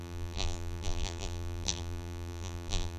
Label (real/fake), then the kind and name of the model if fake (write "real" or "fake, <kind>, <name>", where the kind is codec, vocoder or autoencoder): fake, vocoder, BigVGAN v2